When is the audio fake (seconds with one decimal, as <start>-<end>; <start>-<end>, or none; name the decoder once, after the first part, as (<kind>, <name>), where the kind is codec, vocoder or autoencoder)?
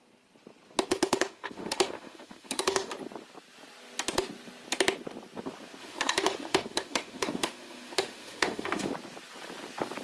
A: 0.9-2.9 (autoencoder, DAC-VAE); 5.8-8.9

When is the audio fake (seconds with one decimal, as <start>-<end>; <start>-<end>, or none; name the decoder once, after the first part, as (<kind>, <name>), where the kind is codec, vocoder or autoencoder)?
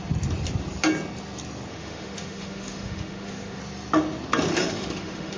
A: 1.7-3.6 (autoencoder, DAC-VAE); 4.5-5.4